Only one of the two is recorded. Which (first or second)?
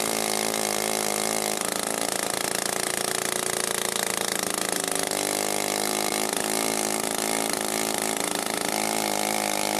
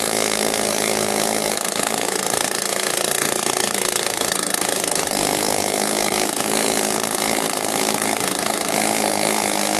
first